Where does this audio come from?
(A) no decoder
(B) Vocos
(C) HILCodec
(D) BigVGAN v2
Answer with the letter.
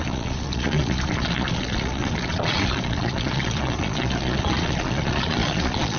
B